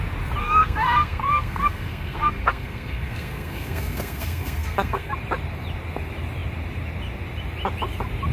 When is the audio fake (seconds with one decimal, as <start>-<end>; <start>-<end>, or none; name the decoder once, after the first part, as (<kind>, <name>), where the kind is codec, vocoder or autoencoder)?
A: 0.4-5.1 (codec, SNAC)